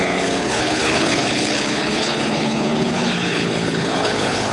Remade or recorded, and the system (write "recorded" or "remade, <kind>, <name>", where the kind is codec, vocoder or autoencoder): remade, codec, HILCodec